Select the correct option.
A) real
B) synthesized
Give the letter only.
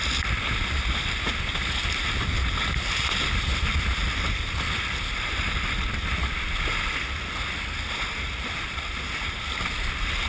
A